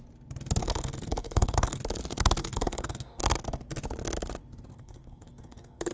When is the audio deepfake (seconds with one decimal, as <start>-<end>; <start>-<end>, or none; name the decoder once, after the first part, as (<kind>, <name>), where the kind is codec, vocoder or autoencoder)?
0.6-1.8 (codec, SNAC); 2.4-3.2; 4.7-5.9